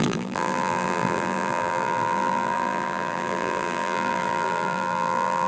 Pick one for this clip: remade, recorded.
remade